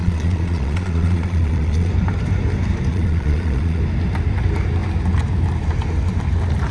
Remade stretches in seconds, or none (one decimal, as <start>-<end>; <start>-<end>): 0.0-1.9; 2.9-3.8